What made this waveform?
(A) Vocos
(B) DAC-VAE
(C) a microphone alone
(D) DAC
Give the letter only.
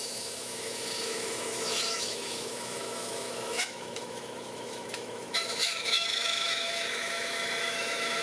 B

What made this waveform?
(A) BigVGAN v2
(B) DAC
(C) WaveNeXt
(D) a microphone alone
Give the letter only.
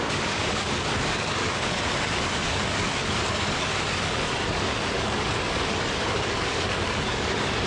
B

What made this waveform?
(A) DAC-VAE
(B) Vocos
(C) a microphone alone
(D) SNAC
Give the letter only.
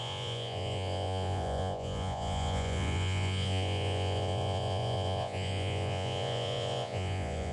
B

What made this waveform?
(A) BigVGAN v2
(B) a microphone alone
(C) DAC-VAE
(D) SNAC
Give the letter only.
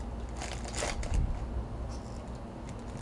B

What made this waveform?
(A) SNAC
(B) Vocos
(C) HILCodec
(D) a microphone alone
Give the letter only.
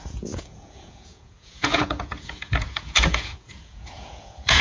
B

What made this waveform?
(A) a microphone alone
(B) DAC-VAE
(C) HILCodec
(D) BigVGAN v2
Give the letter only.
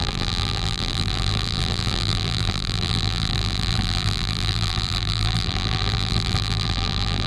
D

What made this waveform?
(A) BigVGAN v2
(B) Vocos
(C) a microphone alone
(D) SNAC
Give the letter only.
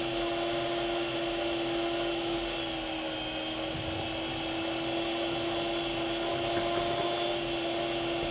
C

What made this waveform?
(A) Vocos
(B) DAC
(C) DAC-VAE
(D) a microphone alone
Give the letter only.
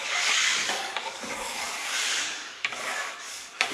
B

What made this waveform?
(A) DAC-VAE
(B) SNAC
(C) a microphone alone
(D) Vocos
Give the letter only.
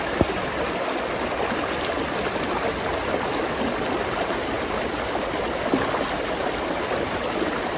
C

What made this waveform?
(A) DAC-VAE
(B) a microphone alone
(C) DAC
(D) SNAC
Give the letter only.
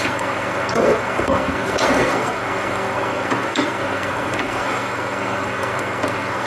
D